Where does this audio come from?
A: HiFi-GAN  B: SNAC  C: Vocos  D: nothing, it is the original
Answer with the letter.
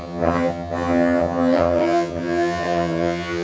A